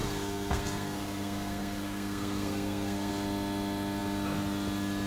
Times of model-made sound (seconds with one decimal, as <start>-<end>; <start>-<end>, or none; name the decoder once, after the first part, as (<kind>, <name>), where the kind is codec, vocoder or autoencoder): 0.0-3.1 (codec, SNAC)

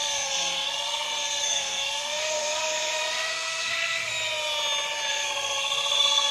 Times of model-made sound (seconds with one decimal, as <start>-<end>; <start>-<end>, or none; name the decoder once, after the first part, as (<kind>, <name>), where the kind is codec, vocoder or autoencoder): 0.0-4.1 (codec, SNAC); 5.1-6.3